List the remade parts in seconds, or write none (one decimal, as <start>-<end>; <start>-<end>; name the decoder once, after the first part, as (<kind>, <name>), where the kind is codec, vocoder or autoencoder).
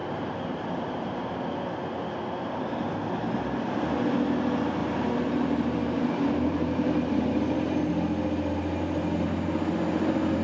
0.0-1.3 (vocoder, BigVGAN v2); 4.8-7.9